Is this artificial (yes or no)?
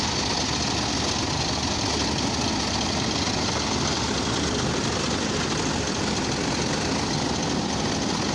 no